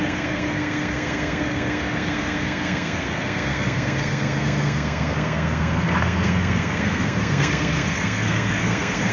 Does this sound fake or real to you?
fake